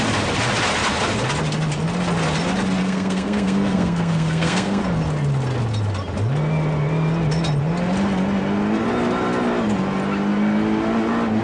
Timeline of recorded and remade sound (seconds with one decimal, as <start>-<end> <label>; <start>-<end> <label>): 0.0-2.8 recorded; 2.8-4.8 remade; 4.8-11.4 recorded